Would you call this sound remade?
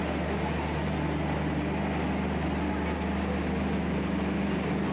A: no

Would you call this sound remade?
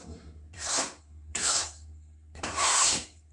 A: yes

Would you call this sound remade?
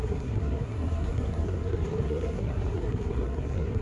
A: yes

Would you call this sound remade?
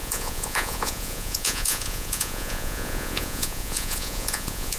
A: yes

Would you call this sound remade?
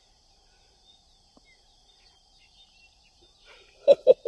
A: no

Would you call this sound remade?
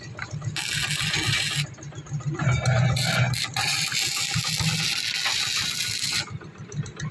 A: no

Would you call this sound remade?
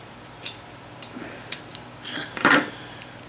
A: yes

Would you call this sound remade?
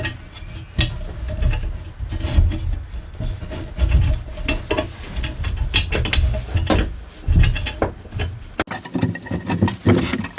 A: no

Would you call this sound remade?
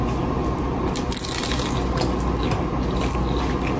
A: no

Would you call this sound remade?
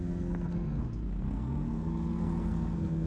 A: yes